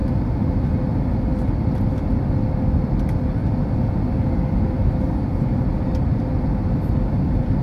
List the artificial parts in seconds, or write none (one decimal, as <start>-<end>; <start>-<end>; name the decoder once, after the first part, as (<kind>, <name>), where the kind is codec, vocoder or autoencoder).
none